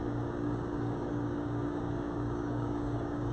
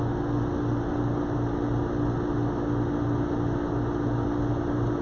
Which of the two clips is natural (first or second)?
second